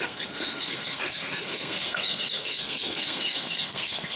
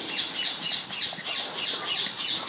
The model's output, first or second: first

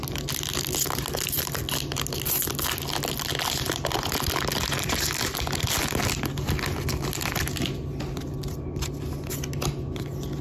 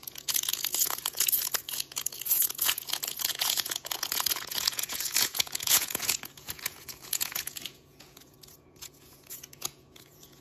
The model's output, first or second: second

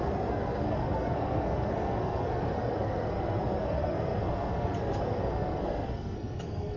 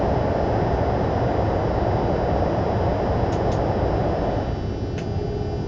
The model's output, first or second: first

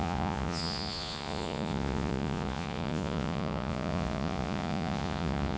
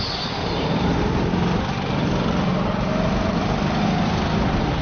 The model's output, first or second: first